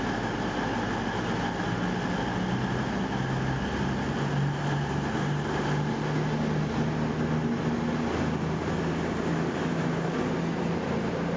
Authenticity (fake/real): real